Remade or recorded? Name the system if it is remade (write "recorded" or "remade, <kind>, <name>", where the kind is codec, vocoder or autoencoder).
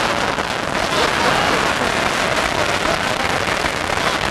recorded